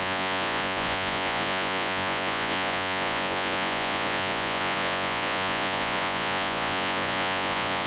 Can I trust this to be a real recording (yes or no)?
no